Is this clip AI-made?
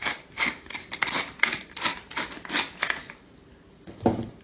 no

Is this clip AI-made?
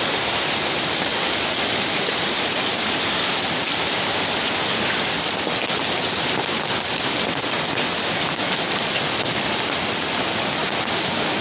no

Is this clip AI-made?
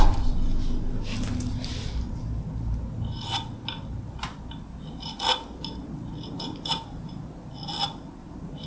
no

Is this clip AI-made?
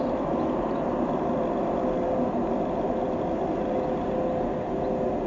no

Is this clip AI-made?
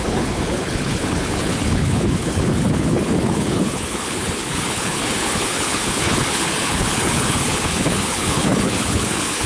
yes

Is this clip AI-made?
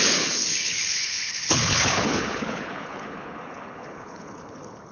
yes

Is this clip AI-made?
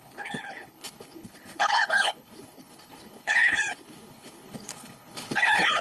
yes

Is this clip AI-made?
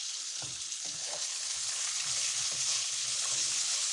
yes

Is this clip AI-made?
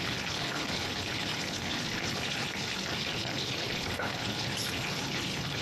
yes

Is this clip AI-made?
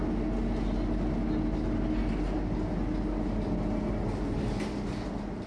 no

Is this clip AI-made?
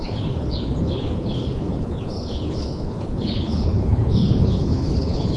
yes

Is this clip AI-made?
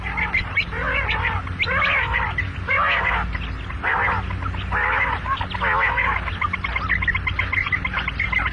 no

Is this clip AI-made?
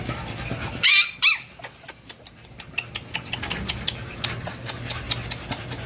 no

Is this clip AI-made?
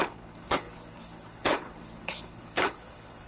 yes